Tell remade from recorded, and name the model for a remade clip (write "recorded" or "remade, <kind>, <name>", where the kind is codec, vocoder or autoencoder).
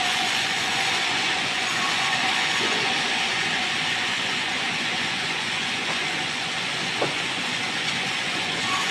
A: remade, vocoder, Vocos